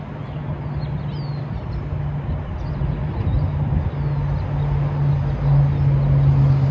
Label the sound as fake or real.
real